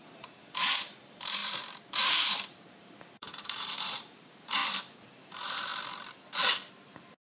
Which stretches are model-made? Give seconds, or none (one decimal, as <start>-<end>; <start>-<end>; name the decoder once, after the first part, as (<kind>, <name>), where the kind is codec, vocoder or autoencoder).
0.0-4.6 (vocoder, BigVGAN v2); 5.2-5.7; 6.7-7.2